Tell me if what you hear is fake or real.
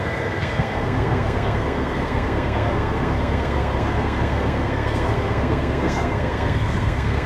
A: fake